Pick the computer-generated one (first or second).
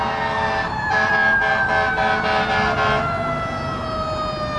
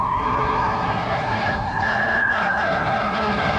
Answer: second